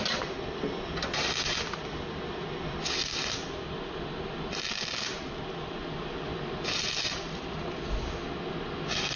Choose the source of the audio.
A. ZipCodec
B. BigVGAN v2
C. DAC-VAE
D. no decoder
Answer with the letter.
D